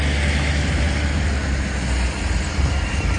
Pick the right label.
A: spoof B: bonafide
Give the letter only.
B